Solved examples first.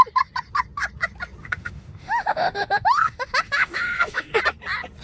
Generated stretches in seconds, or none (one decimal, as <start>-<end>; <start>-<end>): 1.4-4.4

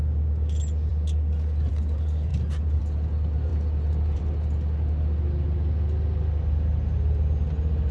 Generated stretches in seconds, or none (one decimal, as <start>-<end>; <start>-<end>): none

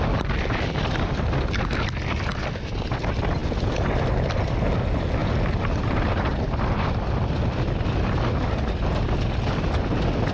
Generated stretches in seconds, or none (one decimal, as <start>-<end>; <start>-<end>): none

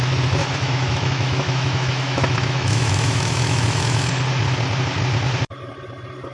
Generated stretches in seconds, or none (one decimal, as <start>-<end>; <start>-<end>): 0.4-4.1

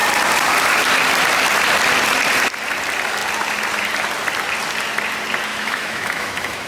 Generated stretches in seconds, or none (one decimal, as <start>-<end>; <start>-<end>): 5.5-6.7

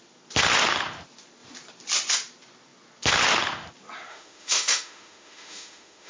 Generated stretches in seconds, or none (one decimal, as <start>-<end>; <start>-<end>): 4.1-6.1